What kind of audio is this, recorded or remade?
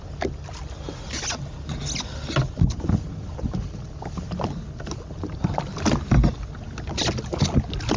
recorded